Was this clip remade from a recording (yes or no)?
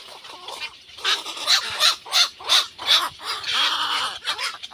yes